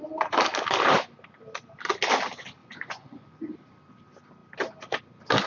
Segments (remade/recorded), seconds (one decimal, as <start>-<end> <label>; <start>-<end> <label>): 0.0-2.6 recorded; 2.6-3.5 remade; 3.5-5.5 recorded